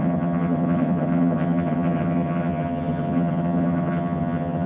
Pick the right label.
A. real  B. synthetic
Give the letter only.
B